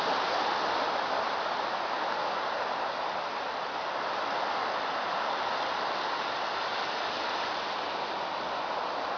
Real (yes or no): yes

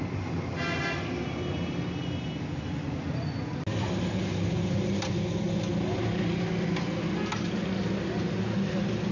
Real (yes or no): yes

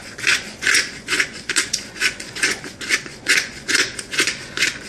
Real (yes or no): no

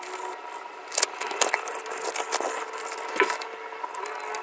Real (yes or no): yes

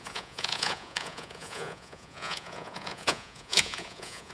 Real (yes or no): no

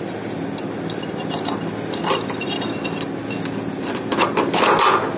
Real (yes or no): yes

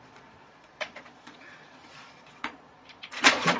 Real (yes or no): no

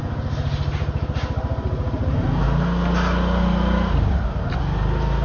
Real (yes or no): yes